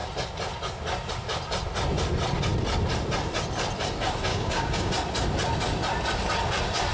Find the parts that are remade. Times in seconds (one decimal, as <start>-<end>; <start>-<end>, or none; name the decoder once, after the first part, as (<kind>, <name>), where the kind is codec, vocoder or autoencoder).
4.3-4.9 (codec, DAC)